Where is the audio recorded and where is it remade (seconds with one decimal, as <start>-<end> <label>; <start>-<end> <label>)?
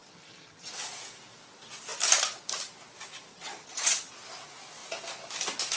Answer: 0.0-0.7 remade; 0.7-3.3 recorded; 3.3-4.1 remade; 4.1-5.8 recorded